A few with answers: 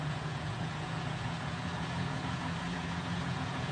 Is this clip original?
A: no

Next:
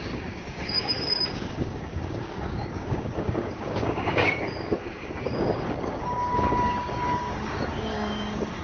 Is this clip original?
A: no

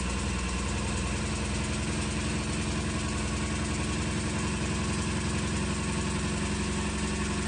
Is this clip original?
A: yes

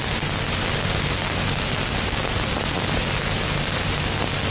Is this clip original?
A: yes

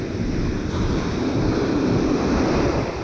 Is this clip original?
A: yes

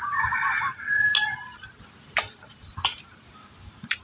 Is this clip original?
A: yes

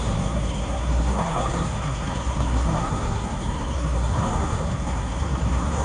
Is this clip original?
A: no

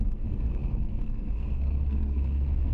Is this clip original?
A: no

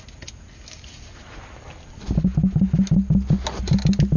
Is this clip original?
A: yes